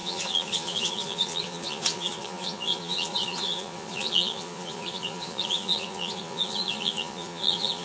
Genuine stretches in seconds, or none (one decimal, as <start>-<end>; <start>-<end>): none